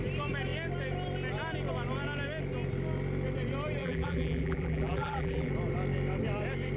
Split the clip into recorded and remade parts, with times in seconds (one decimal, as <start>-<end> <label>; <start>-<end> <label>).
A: 0.0-3.8 recorded; 3.8-5.5 remade; 5.5-6.8 recorded